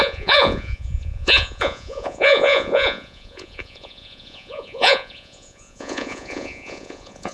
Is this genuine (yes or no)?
no